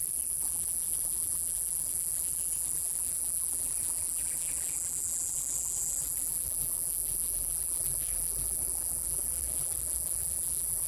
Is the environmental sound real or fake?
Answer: fake